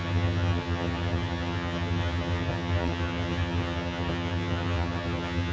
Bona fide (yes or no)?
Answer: no